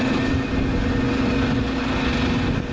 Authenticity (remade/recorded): recorded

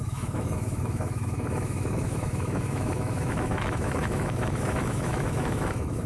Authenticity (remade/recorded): remade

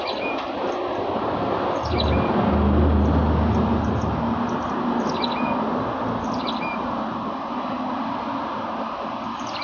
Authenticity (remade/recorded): recorded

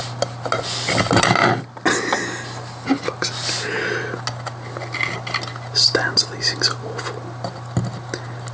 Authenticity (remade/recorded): recorded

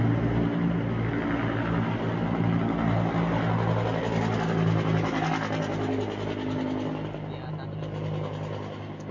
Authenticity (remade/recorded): recorded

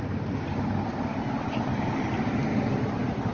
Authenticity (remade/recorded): recorded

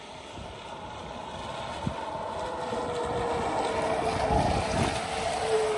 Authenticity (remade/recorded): recorded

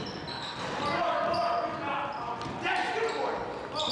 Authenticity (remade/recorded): recorded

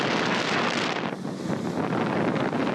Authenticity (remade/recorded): recorded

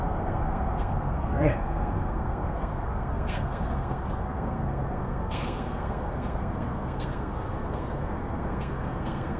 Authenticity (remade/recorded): remade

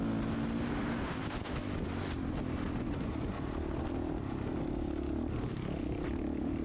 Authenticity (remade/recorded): recorded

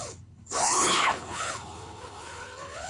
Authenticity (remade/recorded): remade